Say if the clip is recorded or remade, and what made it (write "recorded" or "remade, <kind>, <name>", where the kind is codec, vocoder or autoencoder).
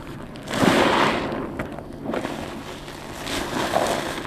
recorded